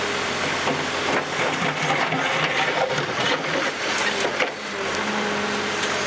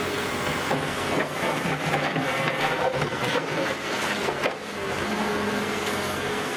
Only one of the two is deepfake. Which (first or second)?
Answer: second